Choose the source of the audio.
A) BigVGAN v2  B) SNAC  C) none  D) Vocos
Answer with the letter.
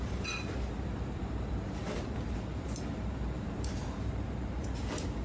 A